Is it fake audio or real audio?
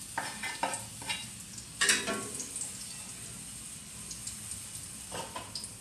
real